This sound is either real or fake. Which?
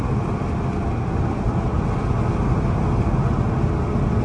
real